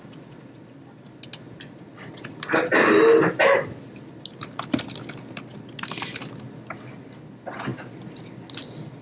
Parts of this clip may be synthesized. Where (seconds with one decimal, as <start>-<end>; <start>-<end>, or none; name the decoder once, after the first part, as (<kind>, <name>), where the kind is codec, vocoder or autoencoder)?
none